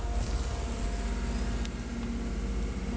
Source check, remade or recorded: recorded